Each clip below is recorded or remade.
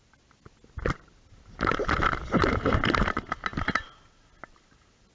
recorded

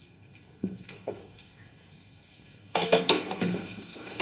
remade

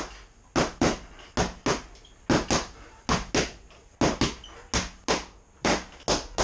recorded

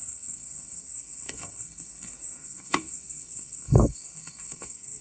remade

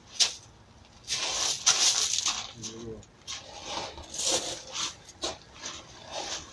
recorded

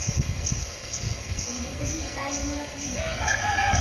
remade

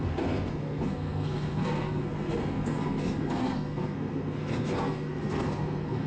remade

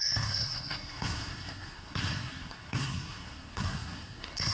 remade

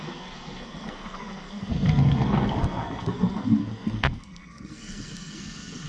remade